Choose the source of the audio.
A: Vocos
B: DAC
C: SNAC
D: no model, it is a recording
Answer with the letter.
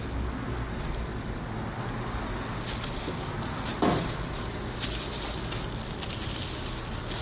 D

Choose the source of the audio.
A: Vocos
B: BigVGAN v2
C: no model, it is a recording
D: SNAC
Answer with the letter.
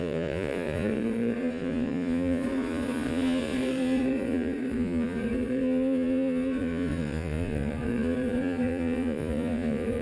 A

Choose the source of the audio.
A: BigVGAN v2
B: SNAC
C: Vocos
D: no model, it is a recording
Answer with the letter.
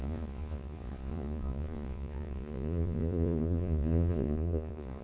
C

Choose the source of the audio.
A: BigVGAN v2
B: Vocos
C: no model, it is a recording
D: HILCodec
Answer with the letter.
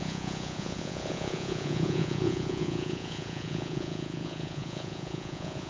B